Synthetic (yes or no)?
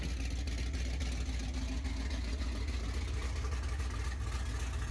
no